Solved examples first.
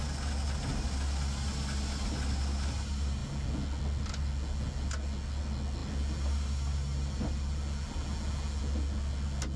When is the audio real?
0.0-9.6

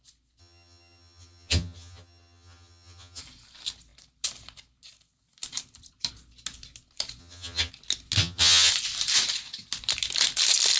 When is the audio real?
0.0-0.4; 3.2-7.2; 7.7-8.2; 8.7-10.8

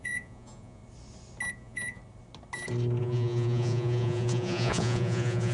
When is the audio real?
0.8-1.5; 2.0-3.0